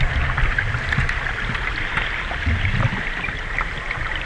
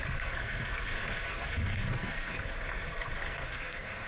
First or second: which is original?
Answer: first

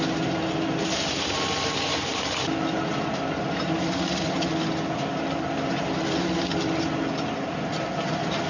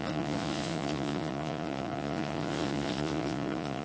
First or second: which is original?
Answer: first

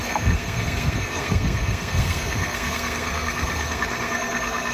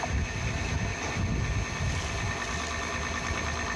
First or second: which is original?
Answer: second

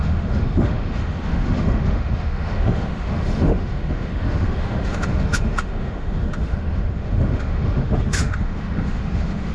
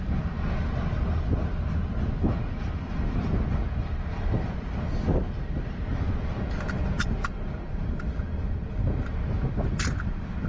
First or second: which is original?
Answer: second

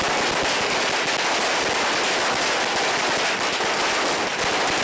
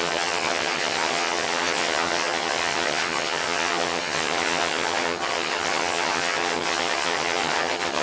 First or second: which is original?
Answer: first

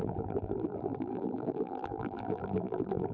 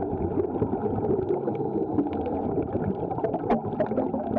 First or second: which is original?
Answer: second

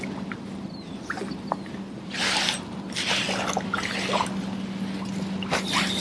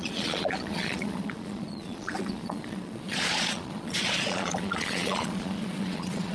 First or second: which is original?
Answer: first